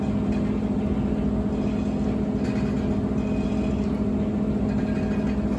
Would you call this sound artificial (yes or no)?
no